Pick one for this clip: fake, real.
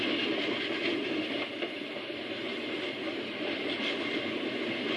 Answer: real